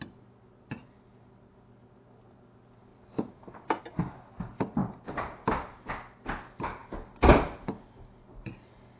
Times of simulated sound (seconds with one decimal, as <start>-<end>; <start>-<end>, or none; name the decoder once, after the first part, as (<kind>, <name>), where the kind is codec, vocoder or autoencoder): 2.9-3.8 (vocoder, BigVGAN v2)